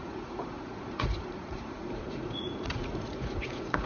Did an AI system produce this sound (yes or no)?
yes